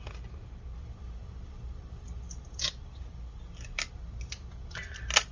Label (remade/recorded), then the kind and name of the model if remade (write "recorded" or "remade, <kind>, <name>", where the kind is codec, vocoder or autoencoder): recorded